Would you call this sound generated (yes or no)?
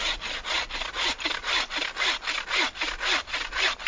no